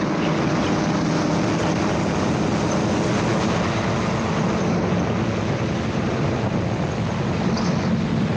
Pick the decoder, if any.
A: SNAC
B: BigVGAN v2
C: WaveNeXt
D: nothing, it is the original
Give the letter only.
D